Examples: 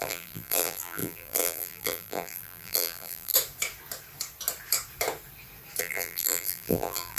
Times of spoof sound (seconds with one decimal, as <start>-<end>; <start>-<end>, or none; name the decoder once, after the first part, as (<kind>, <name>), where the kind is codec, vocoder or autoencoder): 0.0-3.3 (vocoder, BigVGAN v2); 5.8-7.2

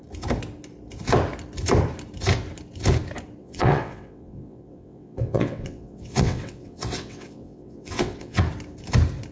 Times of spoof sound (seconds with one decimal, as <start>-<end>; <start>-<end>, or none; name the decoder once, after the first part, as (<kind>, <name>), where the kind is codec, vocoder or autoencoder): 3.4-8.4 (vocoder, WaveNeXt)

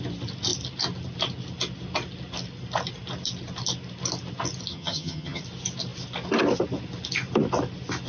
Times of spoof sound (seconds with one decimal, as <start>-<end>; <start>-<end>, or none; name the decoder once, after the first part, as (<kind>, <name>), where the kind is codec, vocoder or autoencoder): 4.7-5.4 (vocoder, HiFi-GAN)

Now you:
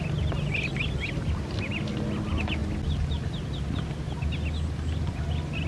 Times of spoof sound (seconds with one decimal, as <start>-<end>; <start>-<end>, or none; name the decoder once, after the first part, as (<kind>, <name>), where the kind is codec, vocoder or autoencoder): none

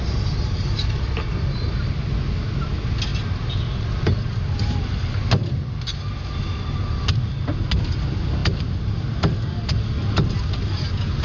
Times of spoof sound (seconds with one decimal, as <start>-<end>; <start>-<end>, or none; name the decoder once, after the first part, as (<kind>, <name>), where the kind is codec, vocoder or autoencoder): none

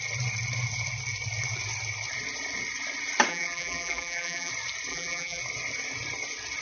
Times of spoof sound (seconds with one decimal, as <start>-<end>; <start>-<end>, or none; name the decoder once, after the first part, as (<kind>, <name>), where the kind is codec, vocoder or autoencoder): 3.3-4.5 (vocoder, BigVGAN v2); 4.9-5.4

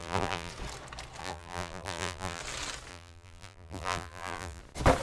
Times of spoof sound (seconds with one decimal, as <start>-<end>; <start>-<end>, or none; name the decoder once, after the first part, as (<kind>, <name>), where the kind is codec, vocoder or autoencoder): 0.0-0.5 (vocoder, BigVGAN v2); 1.2-2.4; 2.9-4.6

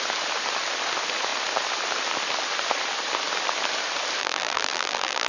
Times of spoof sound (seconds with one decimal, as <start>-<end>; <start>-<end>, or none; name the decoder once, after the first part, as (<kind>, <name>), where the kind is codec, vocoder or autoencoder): 4.2-5.3 (vocoder, BigVGAN v2)